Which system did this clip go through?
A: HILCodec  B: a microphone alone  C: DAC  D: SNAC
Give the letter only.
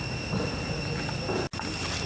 B